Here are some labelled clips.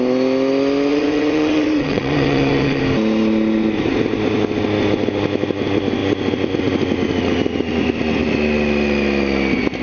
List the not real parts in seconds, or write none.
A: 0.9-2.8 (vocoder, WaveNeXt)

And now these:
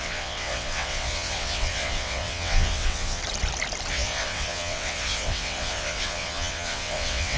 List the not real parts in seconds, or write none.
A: 0.0-3.2 (vocoder, WaveNeXt); 3.9-7.4